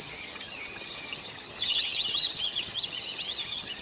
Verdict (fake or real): fake